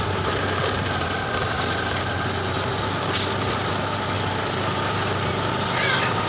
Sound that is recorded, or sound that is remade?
recorded